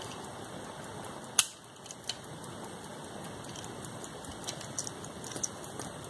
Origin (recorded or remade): recorded